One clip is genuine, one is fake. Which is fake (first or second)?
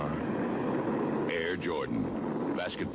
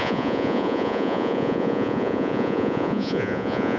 second